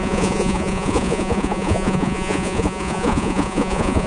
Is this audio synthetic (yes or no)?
yes